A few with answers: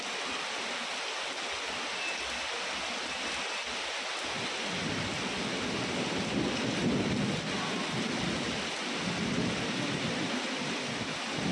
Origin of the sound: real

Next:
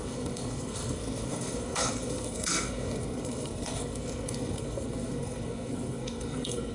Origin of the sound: fake